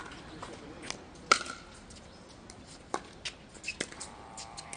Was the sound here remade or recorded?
recorded